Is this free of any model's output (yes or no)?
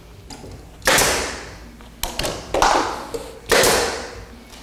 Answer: yes